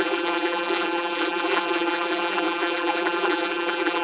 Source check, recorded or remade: remade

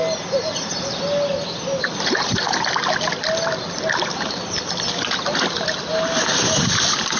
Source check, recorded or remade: recorded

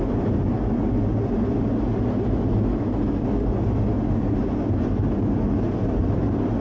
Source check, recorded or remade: recorded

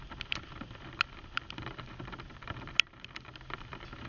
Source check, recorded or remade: remade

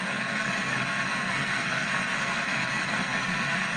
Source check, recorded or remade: remade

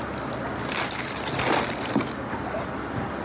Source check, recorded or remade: recorded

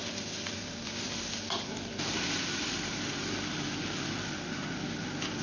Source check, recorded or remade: recorded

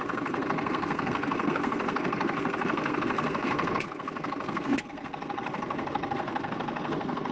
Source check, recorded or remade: remade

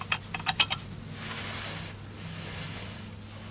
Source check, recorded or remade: recorded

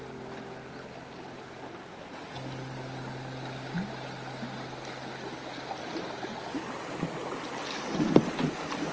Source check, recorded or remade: recorded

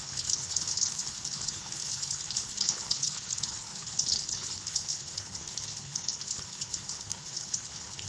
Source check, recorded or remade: remade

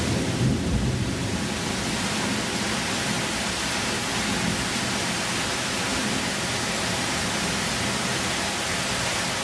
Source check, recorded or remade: recorded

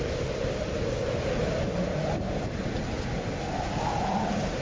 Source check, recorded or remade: recorded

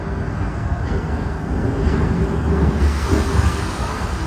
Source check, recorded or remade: remade